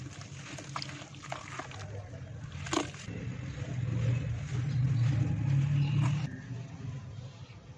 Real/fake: real